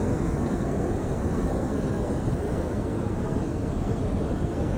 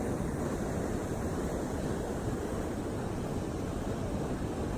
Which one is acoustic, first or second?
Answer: second